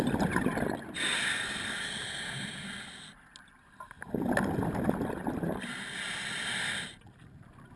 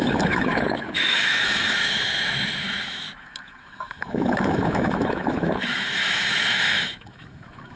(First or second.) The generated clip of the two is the second